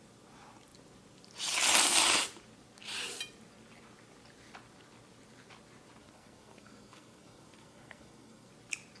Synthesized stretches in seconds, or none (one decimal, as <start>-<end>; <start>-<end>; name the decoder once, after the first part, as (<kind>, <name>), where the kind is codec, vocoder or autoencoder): 6.0-8.5 (codec, SNAC)